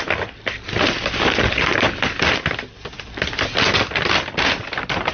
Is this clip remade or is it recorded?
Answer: recorded